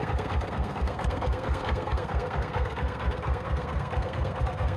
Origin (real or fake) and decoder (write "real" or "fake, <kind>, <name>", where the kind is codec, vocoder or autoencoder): fake, codec, SNAC